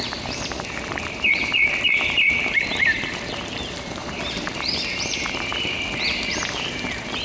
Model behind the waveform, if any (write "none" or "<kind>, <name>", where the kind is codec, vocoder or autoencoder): vocoder, BigVGAN v2